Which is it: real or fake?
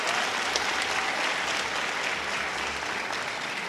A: real